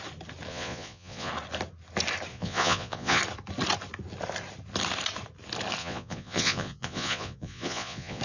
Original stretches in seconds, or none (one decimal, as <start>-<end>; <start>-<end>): 0.0-0.5; 1.3-2.3; 3.2-5.8